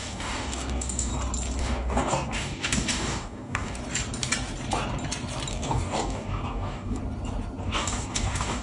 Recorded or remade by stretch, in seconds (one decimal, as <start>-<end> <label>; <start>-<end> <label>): 0.0-1.1 remade; 1.1-1.6 recorded; 1.6-3.8 remade; 3.8-5.5 recorded; 5.5-7.0 remade; 7.0-7.6 recorded; 7.6-8.6 remade